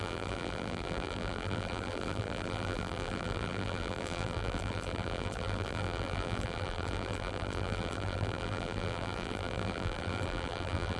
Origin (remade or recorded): remade